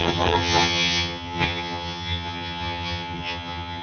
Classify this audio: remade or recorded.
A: remade